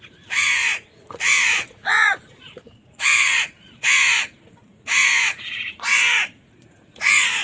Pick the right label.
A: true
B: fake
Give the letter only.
B